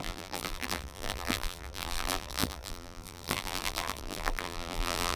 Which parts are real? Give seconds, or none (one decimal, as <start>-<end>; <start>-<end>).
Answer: none